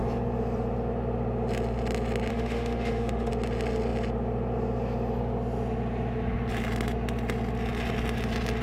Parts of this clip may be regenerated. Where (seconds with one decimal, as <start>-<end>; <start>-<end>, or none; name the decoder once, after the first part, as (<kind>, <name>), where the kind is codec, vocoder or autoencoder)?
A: 2.3-3.3 (autoencoder, DAC-VAE)